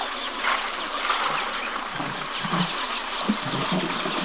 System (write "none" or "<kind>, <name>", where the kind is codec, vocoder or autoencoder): none